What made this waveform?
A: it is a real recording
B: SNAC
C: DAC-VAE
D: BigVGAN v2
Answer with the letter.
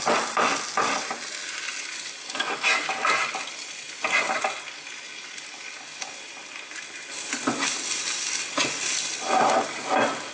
A